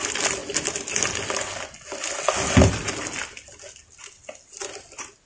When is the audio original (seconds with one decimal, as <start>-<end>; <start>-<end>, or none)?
0.0-5.3